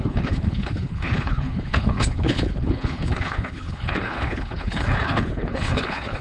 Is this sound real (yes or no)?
no